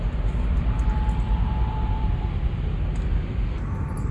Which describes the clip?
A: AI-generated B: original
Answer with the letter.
B